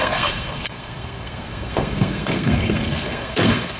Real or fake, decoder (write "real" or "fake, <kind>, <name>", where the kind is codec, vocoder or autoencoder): fake, codec, SNAC